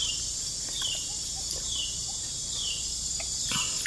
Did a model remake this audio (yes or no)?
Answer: no